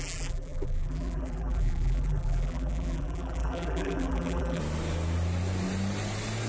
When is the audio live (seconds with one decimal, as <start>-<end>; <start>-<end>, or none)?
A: 4.6-6.5